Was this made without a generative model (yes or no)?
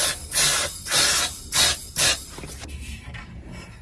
yes